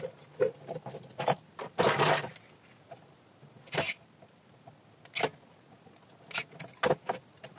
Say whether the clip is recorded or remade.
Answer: recorded